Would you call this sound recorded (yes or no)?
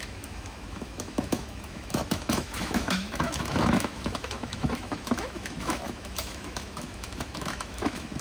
no